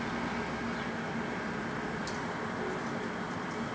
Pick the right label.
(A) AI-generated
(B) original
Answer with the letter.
B